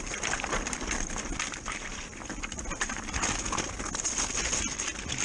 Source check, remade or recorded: recorded